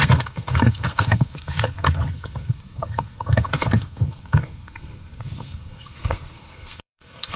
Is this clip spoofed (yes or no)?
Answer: yes